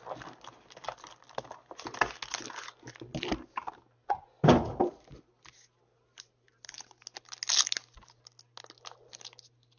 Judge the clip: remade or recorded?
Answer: recorded